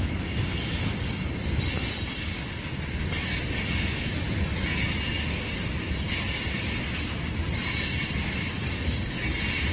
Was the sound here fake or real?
real